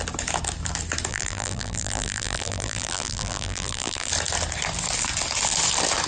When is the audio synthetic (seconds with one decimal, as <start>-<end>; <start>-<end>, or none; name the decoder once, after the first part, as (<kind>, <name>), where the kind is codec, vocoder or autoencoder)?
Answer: 1.1-4.1 (vocoder, BigVGAN v2)